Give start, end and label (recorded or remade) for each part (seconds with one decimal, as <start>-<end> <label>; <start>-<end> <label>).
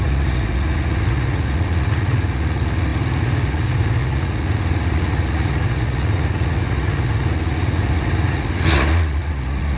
0.0-9.8 remade